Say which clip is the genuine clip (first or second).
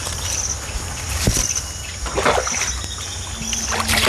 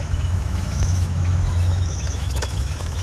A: first